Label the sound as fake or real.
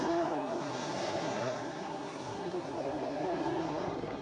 fake